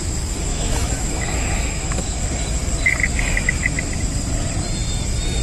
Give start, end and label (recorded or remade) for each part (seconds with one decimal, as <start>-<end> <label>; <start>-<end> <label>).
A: 0.0-0.5 recorded; 0.5-2.2 remade; 2.2-5.4 recorded